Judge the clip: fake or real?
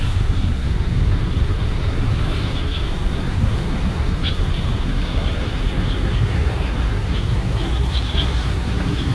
fake